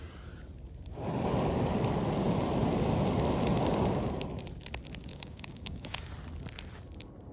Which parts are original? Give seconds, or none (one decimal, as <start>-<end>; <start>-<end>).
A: 0.0-5.1; 6.1-7.3